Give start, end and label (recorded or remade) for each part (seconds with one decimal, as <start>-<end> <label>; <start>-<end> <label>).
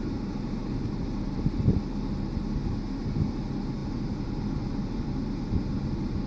0.0-6.3 recorded